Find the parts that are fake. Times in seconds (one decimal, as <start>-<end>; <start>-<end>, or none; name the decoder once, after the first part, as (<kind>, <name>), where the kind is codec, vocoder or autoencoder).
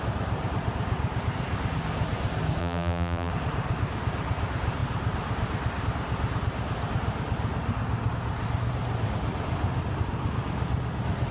2.6-3.3 (vocoder, BigVGAN v2)